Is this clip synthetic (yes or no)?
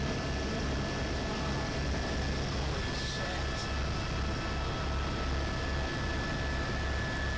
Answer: no